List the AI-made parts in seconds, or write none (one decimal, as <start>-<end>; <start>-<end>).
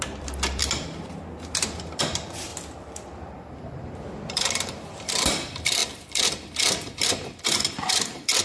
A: 0.0-0.6; 2.0-2.5; 4.3-8.4